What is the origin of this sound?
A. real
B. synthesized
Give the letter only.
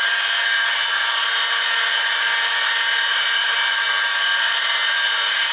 A